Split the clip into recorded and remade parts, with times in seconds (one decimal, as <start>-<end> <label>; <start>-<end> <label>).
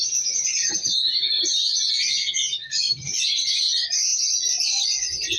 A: 0.0-1.3 remade; 1.3-2.8 recorded; 2.8-4.1 remade; 4.1-4.6 recorded; 4.6-5.4 remade